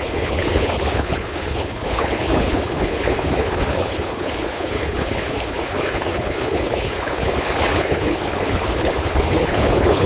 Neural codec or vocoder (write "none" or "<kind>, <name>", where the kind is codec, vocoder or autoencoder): codec, HILCodec